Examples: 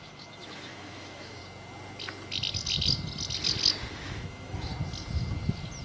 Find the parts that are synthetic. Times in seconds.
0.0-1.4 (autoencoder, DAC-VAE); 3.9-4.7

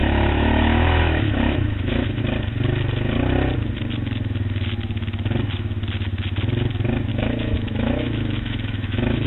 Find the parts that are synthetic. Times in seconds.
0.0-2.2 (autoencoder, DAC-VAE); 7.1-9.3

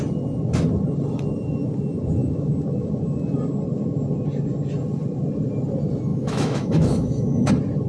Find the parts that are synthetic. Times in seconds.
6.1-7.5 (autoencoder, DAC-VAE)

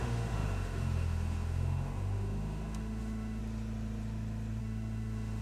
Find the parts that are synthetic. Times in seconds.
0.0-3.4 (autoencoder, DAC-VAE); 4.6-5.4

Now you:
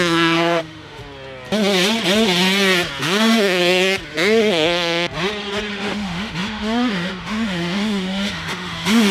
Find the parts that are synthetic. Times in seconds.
0.0-1.0 (autoencoder, DAC-VAE); 3.0-3.6; 5.7-9.1

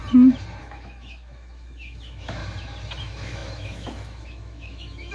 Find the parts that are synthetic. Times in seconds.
0.6-2.4 (autoencoder, DAC-VAE); 3.0-5.1